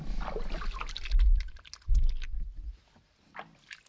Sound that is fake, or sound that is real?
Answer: real